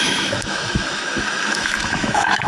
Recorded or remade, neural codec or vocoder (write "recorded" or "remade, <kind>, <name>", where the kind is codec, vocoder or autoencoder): remade, autoencoder, DAC-VAE